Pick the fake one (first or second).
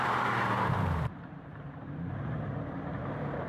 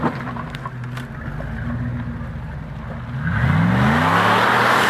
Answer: first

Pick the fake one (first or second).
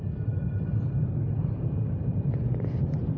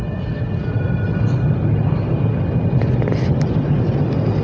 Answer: first